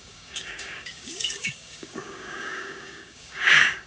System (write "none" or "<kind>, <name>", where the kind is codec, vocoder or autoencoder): codec, DAC